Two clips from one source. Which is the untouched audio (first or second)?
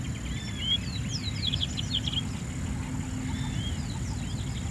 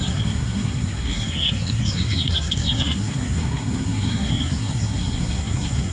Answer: first